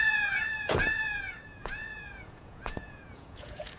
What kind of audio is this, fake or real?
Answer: fake